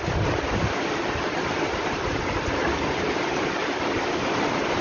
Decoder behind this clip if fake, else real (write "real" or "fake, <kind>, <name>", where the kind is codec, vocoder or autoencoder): real